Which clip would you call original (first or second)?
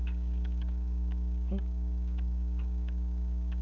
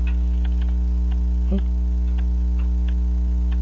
second